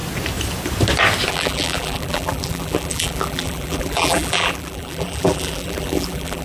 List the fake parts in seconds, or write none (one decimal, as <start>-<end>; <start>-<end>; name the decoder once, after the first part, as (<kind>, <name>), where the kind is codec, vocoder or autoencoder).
1.3-6.4 (vocoder, BigVGAN v2)